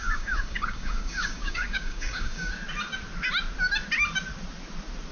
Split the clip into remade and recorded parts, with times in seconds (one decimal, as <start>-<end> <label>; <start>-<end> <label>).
0.0-2.5 remade; 2.5-5.1 recorded